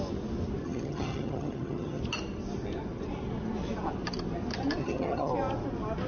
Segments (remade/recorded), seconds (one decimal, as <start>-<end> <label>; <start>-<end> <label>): 0.0-0.6 recorded; 0.6-2.0 remade; 2.0-4.8 recorded; 4.8-5.3 remade; 5.3-6.1 recorded

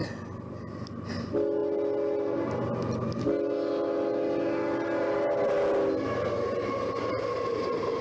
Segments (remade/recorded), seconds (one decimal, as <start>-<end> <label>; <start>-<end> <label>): 0.0-8.0 recorded

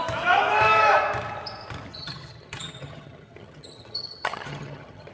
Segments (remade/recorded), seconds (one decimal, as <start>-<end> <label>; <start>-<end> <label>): 0.0-1.9 recorded; 1.9-5.1 remade

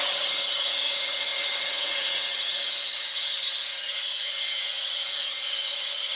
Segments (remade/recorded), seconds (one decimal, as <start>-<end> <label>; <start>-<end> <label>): 0.0-6.1 remade